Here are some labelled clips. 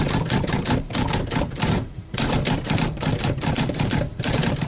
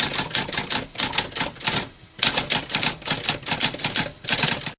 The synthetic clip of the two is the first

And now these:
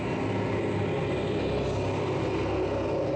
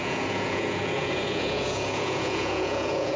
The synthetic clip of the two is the second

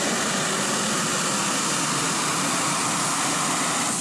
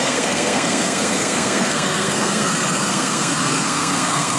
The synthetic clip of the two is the second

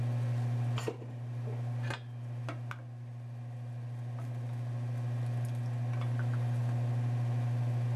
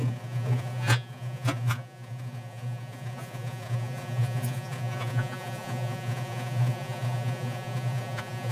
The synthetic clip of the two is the second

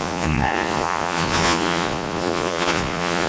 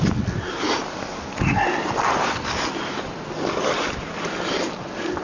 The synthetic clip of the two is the first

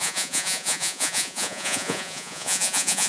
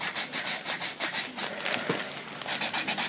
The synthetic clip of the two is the first